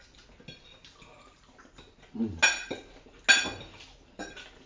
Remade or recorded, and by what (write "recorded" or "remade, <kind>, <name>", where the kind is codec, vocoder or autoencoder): recorded